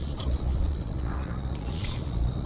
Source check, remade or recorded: remade